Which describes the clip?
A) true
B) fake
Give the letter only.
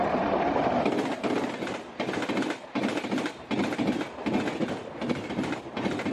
A